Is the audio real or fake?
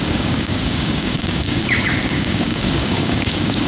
fake